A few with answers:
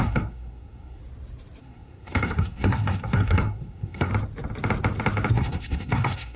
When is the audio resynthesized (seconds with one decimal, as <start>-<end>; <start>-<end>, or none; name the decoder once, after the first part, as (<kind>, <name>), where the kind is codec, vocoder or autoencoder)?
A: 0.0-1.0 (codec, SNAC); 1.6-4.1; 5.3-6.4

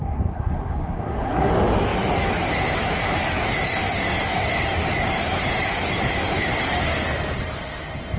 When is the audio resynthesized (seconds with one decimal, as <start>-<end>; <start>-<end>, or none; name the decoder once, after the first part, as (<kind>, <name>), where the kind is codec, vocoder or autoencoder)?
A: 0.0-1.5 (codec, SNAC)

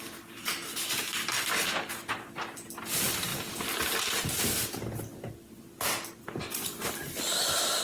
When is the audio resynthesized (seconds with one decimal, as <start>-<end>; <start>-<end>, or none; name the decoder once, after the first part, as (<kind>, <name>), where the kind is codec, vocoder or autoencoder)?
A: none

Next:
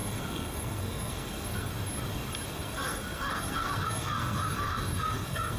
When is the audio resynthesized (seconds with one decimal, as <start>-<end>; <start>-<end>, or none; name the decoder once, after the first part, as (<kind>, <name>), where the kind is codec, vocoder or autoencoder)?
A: 0.0-1.7 (codec, SNAC); 2.5-5.6

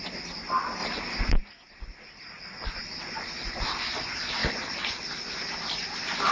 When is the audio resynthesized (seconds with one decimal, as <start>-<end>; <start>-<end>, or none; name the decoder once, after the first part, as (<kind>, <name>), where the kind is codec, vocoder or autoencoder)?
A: none